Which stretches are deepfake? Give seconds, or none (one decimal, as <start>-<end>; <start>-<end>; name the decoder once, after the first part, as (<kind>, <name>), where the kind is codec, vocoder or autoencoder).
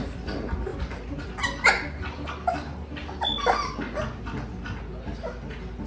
none